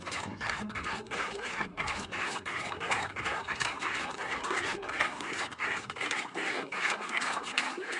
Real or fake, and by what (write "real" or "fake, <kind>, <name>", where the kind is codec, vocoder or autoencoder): fake, codec, SNAC